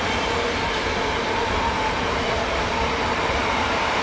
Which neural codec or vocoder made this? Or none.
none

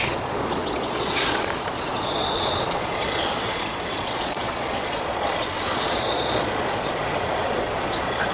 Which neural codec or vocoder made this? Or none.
vocoder, Vocos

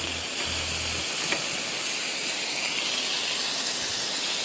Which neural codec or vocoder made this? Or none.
none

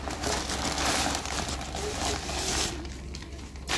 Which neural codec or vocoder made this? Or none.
none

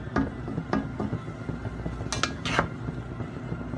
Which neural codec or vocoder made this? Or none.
none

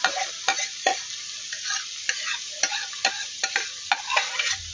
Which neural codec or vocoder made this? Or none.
none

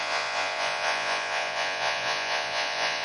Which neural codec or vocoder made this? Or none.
vocoder, Vocos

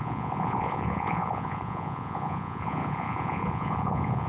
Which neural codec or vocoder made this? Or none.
vocoder, Vocos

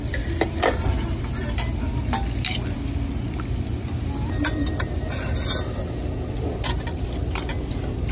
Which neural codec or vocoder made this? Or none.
none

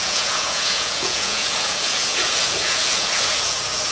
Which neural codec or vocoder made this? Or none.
vocoder, Vocos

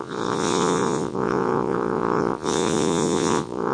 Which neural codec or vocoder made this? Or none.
vocoder, Vocos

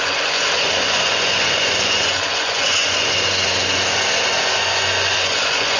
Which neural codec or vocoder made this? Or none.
vocoder, Vocos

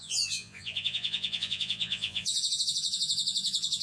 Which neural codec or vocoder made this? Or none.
vocoder, Vocos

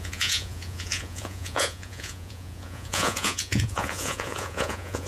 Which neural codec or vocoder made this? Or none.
vocoder, Vocos